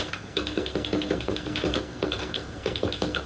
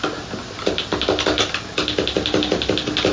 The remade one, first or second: first